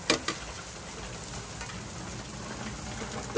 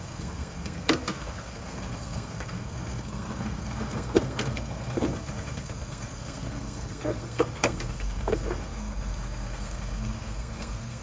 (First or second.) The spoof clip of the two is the second